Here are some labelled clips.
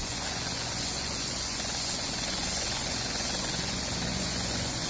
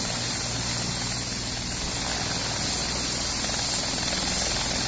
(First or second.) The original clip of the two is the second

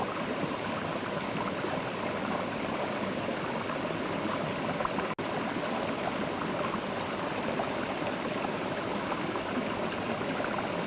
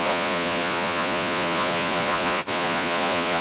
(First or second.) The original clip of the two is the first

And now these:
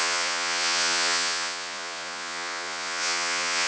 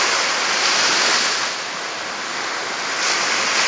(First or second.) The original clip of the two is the second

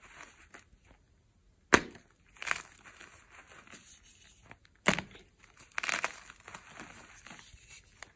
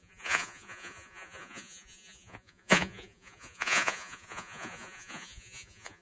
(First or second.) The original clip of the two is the first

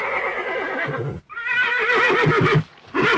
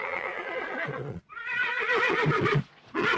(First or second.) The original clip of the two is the first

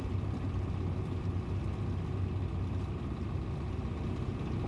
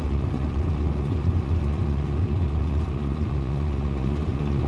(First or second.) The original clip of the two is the first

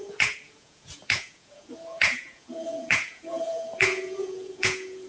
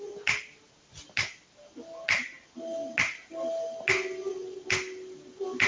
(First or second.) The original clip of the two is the second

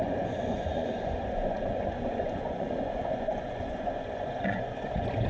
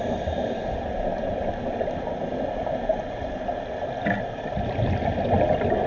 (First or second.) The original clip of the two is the second